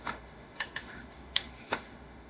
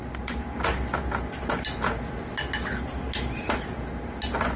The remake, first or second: first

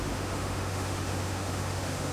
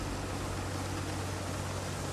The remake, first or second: first